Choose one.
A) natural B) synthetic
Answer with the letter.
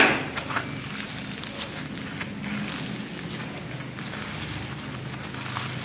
A